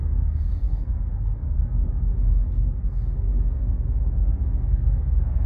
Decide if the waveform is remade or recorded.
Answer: remade